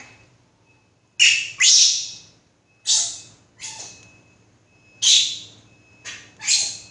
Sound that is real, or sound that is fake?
real